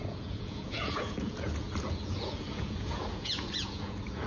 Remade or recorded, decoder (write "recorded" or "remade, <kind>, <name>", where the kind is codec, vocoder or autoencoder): remade, vocoder, Vocos